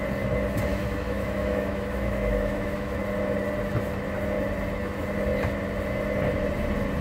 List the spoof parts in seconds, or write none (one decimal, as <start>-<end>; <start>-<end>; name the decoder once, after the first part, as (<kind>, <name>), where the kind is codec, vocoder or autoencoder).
0.7-3.0 (autoencoder, DAC-VAE)